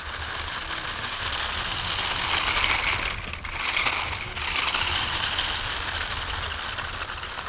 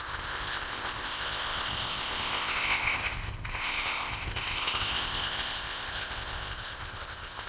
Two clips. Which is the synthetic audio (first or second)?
second